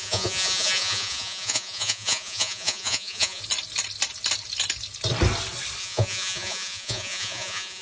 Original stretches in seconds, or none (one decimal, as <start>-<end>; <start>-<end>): 3.4-5.8